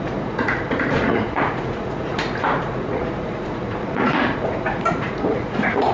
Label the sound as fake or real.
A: fake